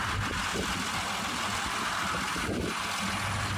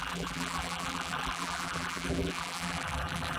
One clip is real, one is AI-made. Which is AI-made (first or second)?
second